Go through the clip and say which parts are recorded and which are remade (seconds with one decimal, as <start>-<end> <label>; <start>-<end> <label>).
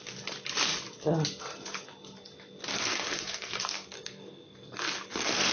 0.0-2.7 recorded; 2.7-5.5 remade